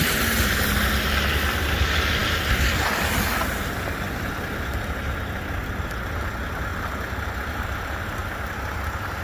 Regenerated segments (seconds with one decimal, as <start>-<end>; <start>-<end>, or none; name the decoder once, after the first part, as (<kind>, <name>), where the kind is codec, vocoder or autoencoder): 8.2-9.2 (vocoder, BigVGAN v2)